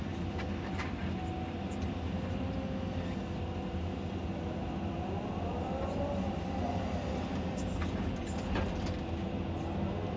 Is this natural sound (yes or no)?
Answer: yes